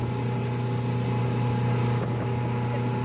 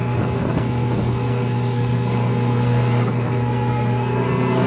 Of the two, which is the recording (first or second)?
first